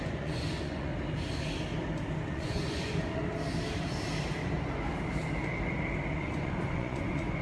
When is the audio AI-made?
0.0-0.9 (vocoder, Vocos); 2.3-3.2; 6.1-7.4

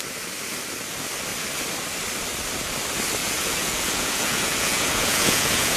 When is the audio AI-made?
3.2-5.8 (vocoder, Vocos)

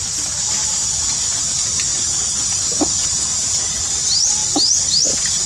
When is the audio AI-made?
1.9-3.9 (vocoder, Vocos)

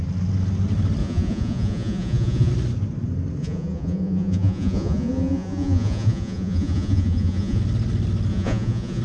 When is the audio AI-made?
1.0-2.5 (vocoder, Vocos); 3.4-7.6; 8.3-9.0

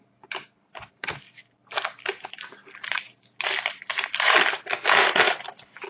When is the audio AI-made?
none

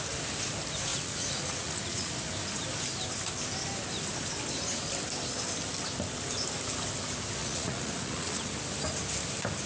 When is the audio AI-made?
0.9-2.1 (vocoder, Vocos); 7.4-8.5

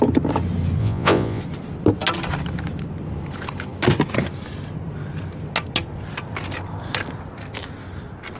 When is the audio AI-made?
0.8-1.4 (vocoder, Vocos)

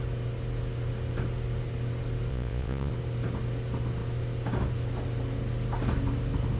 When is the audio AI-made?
2.3-2.9 (vocoder, Vocos)